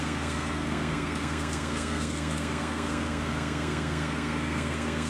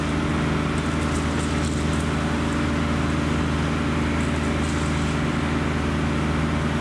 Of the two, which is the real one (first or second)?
second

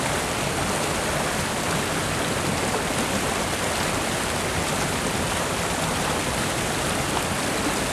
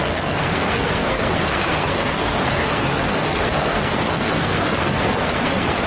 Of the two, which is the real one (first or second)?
first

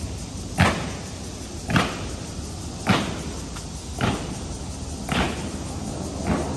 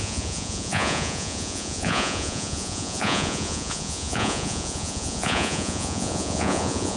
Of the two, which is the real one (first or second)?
first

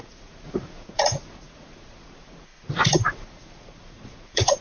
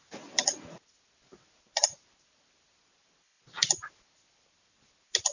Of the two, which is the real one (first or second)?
second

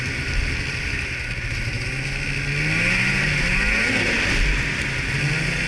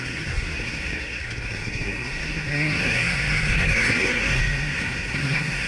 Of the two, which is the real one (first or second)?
first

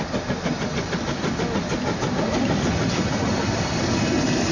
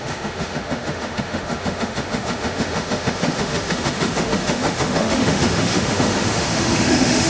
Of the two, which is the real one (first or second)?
first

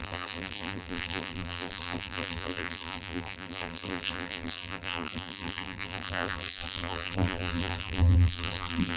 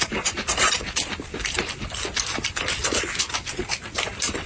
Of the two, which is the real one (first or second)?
second